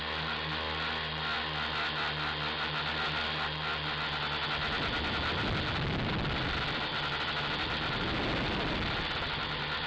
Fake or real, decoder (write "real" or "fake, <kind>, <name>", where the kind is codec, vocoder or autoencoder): real